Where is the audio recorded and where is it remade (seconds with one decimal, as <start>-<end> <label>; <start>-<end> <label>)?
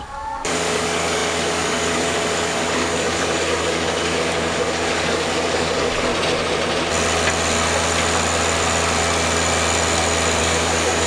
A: 0.0-6.1 remade; 6.1-10.4 recorded; 10.4-11.1 remade